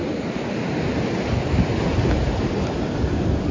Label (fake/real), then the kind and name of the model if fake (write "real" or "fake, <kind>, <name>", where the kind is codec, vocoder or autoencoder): real